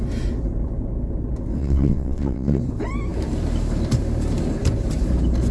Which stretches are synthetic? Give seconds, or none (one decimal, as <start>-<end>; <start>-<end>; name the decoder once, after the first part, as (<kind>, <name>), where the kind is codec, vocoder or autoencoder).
1.6-2.6 (vocoder, WaveNeXt)